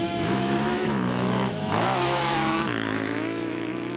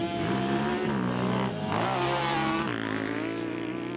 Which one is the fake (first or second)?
first